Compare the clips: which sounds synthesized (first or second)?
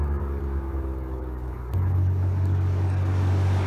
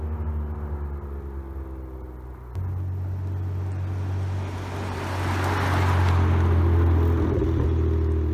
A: first